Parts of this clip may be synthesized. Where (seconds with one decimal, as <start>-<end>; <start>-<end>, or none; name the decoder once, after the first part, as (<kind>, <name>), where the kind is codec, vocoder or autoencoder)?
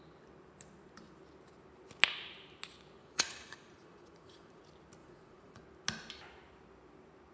3.0-4.6 (vocoder, Vocos); 5.0-5.6